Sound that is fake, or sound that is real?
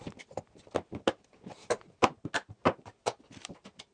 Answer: real